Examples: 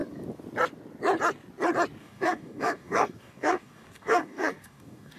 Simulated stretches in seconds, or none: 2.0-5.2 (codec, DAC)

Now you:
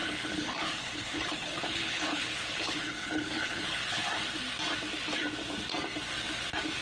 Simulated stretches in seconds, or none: 0.0-4.1 (codec, HILCodec)

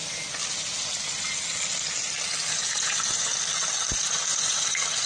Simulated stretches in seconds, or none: 2.5-3.3 (vocoder, Vocos); 3.9-5.1